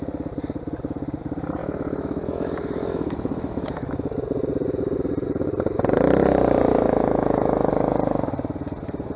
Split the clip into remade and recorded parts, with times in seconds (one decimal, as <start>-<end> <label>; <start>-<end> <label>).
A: 0.0-1.6 recorded; 1.6-3.9 remade; 3.9-6.7 recorded; 6.7-7.7 remade; 7.7-9.2 recorded